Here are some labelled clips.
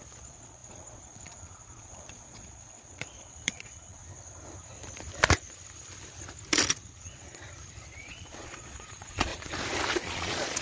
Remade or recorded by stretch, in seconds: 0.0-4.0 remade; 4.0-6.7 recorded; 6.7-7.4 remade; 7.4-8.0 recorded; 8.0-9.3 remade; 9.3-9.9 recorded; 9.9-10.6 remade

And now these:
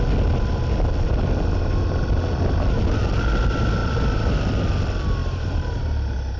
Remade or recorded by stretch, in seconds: 0.0-3.8 recorded; 3.8-4.3 remade; 4.3-5.2 recorded; 5.2-6.4 remade

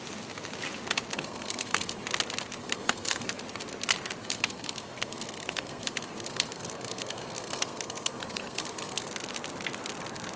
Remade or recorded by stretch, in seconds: 0.0-1.1 recorded; 1.1-2.0 remade; 2.0-2.6 recorded; 2.6-3.4 remade; 3.4-4.2 recorded; 4.2-9.1 remade; 9.1-10.4 recorded

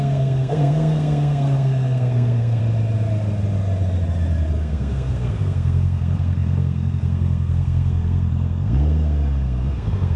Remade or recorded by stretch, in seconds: 0.0-2.6 remade; 2.6-4.6 recorded; 4.6-10.2 remade

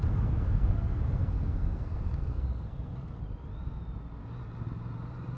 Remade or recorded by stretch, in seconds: 0.0-3.2 remade; 3.2-5.4 recorded

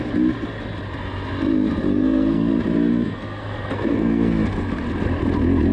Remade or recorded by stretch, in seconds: 0.0-1.9 recorded; 1.9-2.5 remade; 2.5-2.9 recorded; 2.9-4.3 remade; 4.3-5.7 recorded